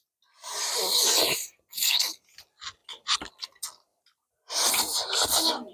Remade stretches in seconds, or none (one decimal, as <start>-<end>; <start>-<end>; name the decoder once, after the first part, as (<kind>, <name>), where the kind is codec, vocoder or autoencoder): 1.7-2.2 (codec, DAC)